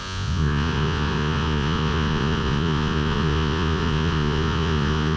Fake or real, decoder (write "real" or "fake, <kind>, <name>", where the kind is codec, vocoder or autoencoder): fake, vocoder, Vocos